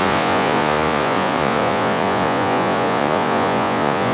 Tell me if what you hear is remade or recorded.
remade